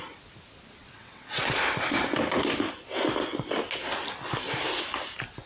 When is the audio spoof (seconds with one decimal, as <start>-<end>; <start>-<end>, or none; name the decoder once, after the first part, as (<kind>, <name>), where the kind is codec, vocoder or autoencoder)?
0.8-1.4 (vocoder, WaveNeXt)